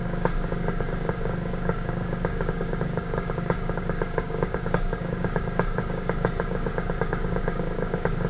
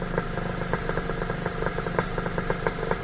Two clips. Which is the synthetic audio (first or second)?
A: first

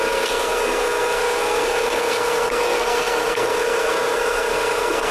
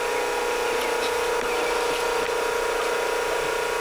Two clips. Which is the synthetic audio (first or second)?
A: first